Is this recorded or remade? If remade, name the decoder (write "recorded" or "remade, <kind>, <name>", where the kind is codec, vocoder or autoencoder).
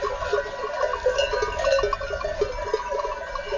recorded